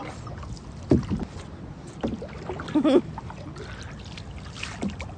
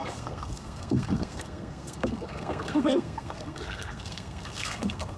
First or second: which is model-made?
second